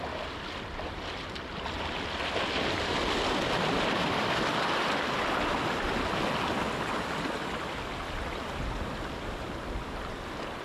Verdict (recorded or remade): recorded